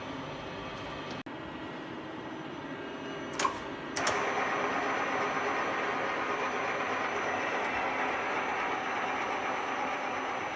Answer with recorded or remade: recorded